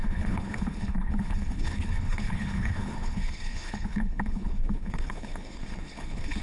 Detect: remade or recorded remade